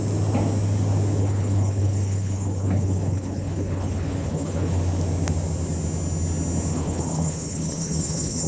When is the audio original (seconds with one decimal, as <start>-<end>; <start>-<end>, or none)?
0.0-1.2; 4.8-6.7